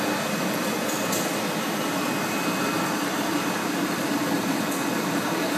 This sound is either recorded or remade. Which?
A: remade